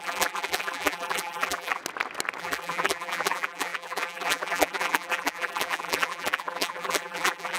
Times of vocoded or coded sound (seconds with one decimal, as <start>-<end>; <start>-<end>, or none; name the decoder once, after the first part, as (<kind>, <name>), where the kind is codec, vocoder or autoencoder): 0.0-1.8 (vocoder, BigVGAN v2); 2.4-7.6